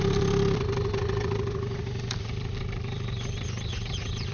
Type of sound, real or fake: real